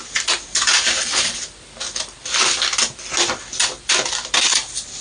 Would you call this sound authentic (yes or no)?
no